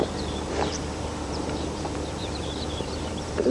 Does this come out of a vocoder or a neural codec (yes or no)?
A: yes